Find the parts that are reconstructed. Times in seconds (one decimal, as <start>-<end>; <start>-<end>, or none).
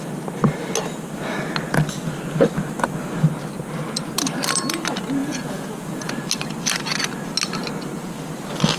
5.2-6.1